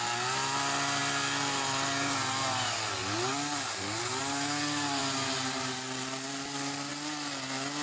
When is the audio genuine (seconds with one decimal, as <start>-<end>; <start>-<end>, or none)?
0.0-7.8